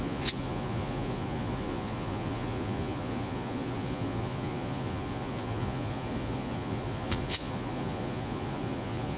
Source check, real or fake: fake